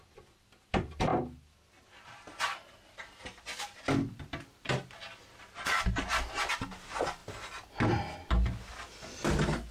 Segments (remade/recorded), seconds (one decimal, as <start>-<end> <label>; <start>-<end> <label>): 0.0-9.7 recorded